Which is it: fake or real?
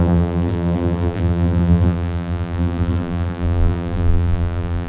fake